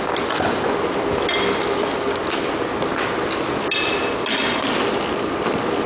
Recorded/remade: recorded